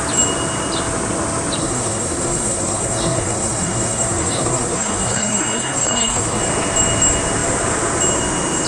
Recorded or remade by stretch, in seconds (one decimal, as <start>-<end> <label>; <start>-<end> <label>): 0.0-1.6 recorded; 1.6-6.4 remade; 6.4-8.7 recorded